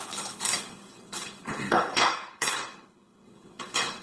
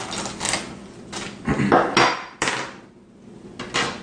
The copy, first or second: first